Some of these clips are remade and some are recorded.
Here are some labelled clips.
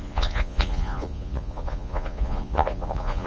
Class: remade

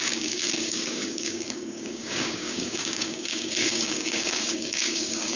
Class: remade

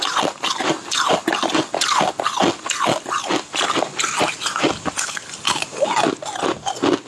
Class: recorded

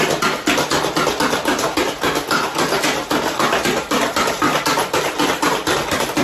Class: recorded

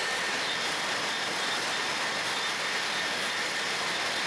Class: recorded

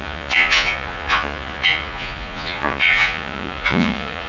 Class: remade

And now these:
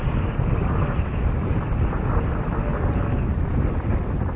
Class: recorded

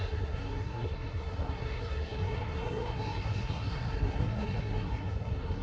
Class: remade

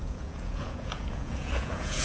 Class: remade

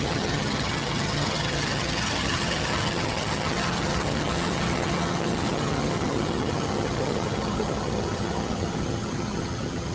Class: remade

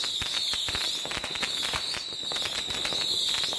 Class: recorded